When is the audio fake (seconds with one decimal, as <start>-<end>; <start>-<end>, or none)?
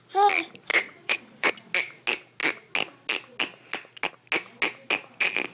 0.7-1.5